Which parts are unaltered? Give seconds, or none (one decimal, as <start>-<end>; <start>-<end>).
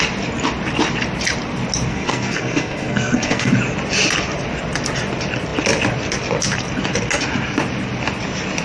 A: 0.0-1.9; 3.5-8.6